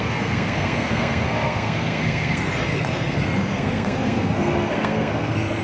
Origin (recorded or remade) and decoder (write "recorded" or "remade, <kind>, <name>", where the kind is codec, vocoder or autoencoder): remade, codec, SNAC